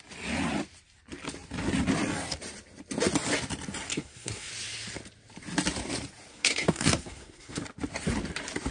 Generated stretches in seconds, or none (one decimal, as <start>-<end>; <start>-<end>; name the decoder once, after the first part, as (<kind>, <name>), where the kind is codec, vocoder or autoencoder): 3.9-4.5 (codec, SNAC); 6.3-7.6